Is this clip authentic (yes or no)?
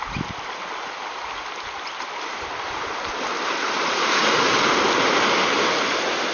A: yes